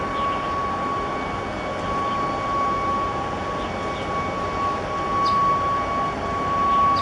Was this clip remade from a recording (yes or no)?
no